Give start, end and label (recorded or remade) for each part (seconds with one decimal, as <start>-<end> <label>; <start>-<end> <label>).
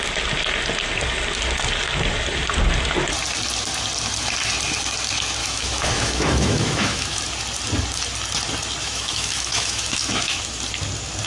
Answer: 0.0-5.4 recorded; 5.4-7.2 remade; 7.2-8.8 recorded; 8.8-10.6 remade; 10.6-11.3 recorded